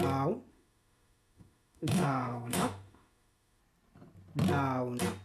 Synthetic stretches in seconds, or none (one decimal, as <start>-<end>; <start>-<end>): 0.5-3.6